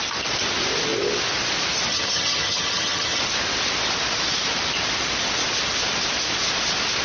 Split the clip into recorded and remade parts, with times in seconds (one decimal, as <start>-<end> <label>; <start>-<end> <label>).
0.0-1.9 recorded; 1.9-3.2 remade; 3.2-7.0 recorded